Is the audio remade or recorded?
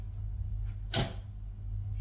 recorded